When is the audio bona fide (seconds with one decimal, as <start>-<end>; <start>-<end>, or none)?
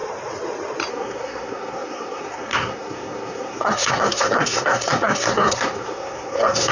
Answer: 0.0-0.9